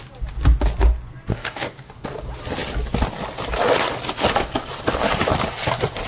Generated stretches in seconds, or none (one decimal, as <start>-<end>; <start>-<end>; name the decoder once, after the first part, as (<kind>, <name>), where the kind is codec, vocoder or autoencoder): 1.3-1.9 (codec, DAC)